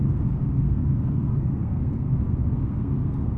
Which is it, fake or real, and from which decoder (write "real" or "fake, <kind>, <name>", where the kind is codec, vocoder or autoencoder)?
fake, codec, SNAC